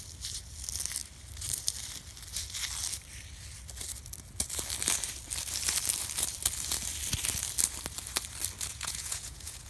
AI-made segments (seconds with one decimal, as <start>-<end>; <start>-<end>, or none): 8.7-9.7